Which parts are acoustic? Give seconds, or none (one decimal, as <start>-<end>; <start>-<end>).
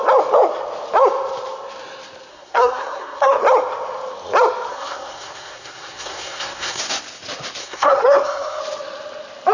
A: 0.0-2.3; 3.4-4.7; 6.8-7.6; 8.6-9.5